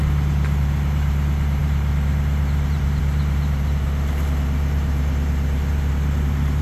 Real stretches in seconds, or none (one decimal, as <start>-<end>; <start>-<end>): none